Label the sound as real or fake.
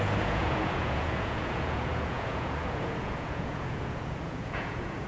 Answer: fake